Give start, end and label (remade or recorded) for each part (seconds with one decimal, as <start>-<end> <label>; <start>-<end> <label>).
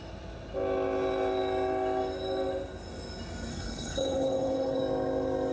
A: 0.0-3.5 recorded; 3.5-4.8 remade; 4.8-5.5 recorded